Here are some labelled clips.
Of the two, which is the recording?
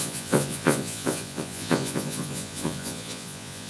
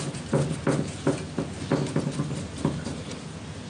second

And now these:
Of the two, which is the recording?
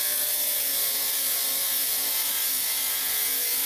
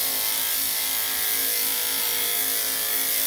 second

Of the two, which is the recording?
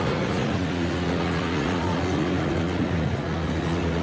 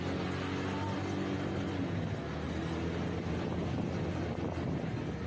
second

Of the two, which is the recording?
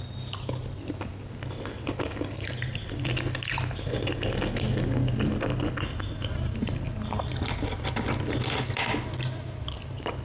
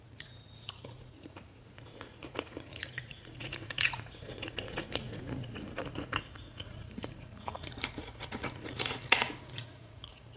first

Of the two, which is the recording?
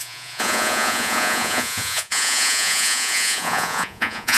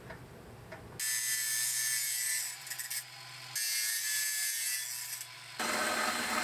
second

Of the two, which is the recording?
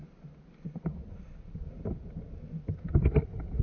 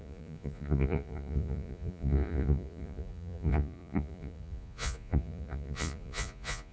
first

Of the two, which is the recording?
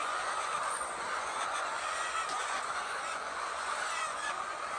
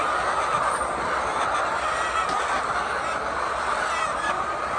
second